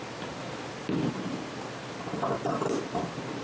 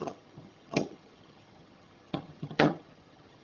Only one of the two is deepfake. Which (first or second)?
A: second